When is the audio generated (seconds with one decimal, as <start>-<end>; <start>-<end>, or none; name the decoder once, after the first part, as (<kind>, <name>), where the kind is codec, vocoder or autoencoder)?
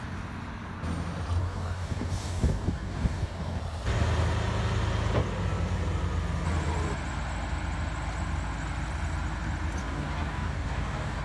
1.4-3.6 (codec, DAC); 9.8-11.2